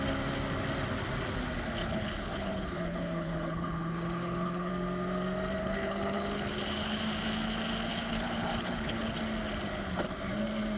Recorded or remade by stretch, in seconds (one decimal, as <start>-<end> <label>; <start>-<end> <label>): 0.0-1.8 recorded; 1.8-4.7 remade; 4.7-5.6 recorded; 5.6-7.0 remade; 7.0-7.9 recorded; 7.9-9.2 remade; 9.2-10.8 recorded